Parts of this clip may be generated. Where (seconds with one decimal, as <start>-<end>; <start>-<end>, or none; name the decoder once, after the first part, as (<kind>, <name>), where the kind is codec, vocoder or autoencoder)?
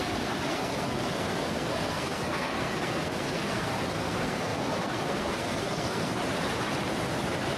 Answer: 0.0-6.2 (codec, SNAC)